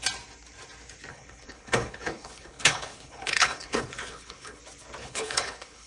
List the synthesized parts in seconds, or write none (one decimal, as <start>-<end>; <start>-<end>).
1.1-4.6; 5.0-5.9